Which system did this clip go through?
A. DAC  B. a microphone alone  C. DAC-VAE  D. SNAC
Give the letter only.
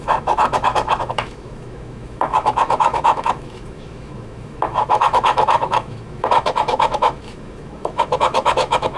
C